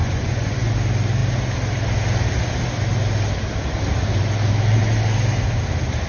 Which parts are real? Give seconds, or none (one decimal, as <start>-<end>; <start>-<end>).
0.7-6.1